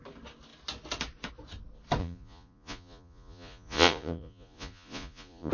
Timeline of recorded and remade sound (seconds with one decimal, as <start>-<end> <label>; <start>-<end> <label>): 0.0-2.0 recorded; 2.0-5.5 remade